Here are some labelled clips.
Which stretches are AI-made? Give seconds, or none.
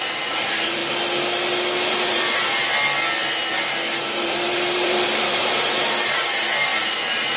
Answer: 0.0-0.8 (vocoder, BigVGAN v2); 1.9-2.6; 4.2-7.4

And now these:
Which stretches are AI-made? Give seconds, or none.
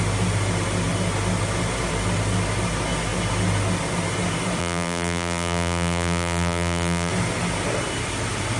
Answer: 4.6-7.1 (vocoder, BigVGAN v2)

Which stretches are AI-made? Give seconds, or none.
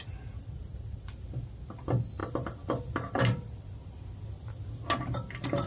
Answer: none